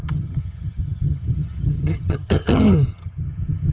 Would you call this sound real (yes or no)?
no